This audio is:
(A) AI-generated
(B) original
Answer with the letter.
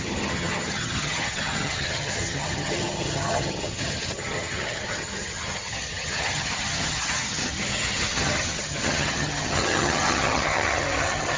A